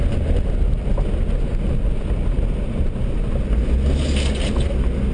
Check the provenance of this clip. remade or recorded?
recorded